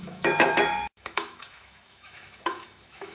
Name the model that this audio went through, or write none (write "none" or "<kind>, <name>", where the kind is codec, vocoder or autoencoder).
autoencoder, DAC-VAE